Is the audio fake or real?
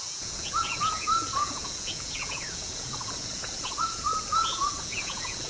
fake